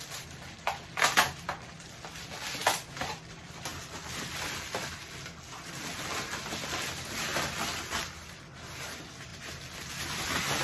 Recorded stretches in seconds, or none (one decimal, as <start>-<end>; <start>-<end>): 0.0-10.6